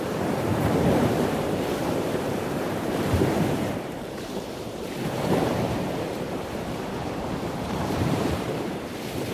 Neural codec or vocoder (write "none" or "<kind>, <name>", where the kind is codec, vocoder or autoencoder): vocoder, BigVGAN v2